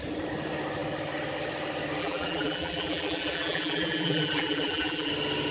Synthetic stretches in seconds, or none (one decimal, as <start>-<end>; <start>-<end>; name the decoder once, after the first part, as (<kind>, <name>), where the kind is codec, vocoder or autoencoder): 2.0-5.1 (vocoder, BigVGAN v2)